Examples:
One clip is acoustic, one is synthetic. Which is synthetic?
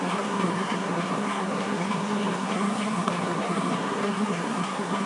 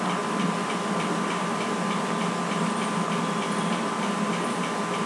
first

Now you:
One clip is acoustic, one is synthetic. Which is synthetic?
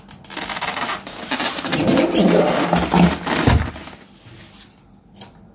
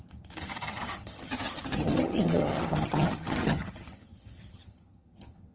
second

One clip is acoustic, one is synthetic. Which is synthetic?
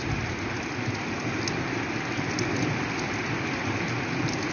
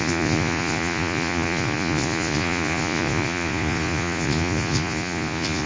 second